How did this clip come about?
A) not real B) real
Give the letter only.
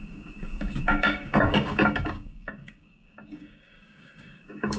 A